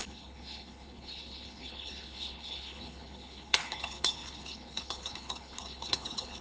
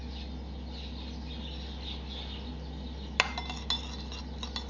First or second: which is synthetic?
first